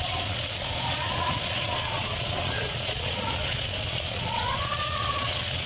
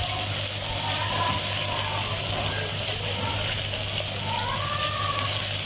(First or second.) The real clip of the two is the second